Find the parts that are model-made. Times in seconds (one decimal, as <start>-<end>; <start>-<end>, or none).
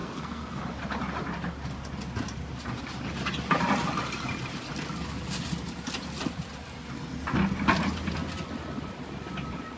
0.0-0.6